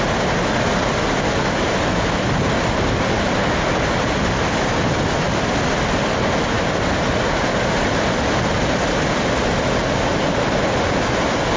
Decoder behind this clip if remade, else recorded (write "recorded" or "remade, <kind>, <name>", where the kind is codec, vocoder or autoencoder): recorded